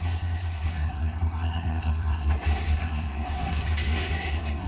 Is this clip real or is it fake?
fake